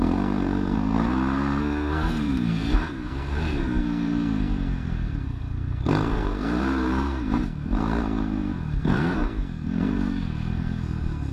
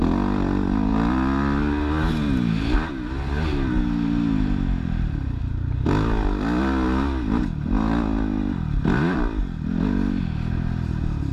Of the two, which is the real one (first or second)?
second